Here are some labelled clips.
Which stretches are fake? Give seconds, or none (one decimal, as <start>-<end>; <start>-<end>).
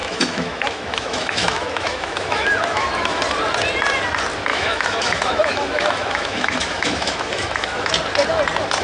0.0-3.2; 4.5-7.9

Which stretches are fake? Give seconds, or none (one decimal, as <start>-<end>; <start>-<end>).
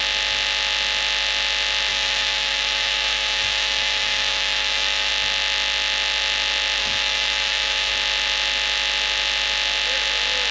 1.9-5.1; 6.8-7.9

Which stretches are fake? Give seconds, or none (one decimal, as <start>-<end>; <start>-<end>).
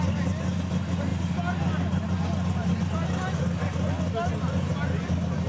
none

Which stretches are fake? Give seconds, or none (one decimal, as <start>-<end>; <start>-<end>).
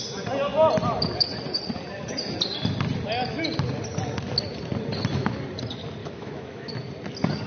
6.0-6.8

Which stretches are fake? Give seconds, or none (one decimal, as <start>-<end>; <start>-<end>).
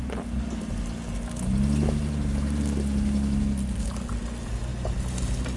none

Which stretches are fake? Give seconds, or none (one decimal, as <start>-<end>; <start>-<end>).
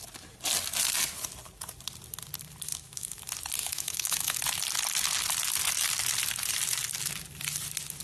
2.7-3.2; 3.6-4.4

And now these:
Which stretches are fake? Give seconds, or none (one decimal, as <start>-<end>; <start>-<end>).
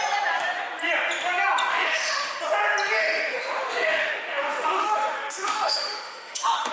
1.7-2.4; 3.0-6.7